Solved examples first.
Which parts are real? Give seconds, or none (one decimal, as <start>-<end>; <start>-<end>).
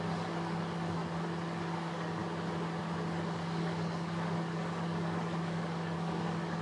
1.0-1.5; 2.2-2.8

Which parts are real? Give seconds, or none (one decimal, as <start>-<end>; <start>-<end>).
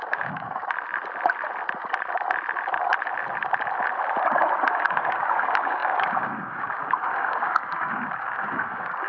0.6-4.7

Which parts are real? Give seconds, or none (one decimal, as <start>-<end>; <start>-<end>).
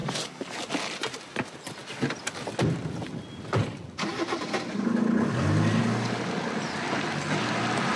0.7-8.0